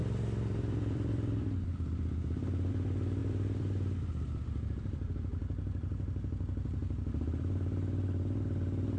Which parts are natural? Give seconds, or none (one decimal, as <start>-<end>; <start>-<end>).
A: 2.7-3.2; 5.1-6.8; 7.4-9.0